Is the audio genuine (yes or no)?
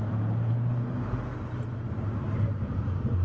yes